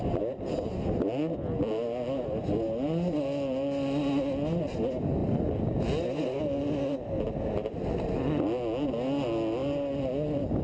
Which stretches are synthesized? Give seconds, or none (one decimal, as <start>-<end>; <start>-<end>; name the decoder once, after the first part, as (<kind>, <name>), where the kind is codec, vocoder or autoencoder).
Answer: none